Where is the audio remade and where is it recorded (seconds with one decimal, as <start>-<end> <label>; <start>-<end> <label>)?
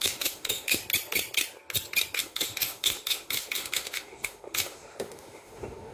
0.0-0.8 remade; 0.8-2.2 recorded; 2.2-5.9 remade